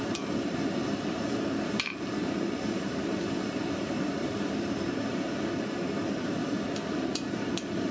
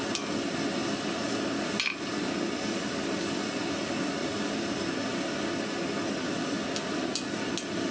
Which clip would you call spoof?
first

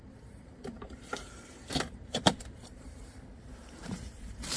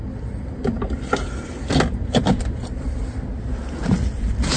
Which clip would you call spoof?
first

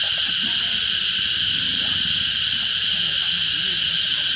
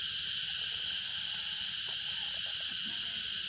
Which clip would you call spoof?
first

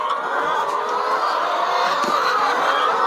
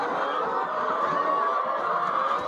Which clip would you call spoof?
second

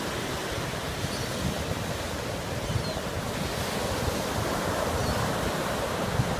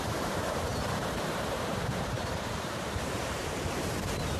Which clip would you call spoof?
second